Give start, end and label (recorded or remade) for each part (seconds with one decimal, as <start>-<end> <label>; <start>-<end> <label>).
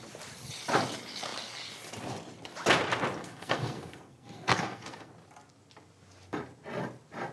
0.0-3.2 recorded; 3.2-5.1 remade; 5.1-7.3 recorded